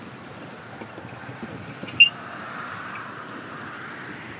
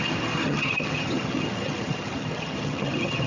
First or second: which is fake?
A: second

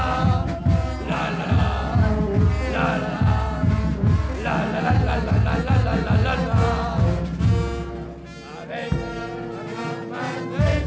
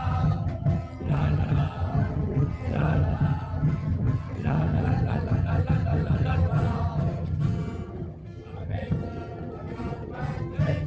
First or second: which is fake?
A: second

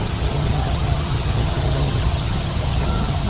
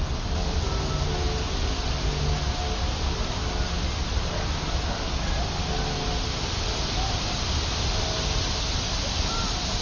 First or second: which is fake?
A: first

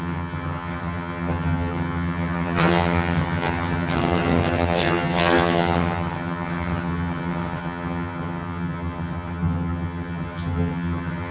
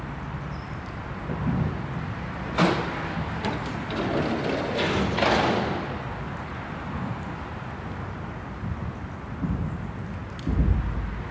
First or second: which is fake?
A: first